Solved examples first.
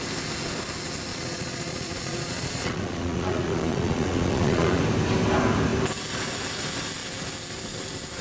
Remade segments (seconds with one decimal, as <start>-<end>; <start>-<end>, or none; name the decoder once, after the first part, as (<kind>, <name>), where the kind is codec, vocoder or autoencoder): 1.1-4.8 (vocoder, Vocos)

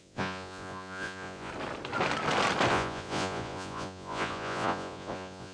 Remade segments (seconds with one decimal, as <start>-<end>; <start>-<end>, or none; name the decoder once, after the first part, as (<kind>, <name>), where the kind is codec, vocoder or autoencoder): 0.0-1.5 (vocoder, Vocos); 2.7-5.5

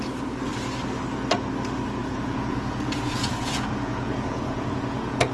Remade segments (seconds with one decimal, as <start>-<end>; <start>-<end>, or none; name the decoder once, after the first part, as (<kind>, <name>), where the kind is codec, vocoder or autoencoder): 2.0-5.3 (vocoder, Vocos)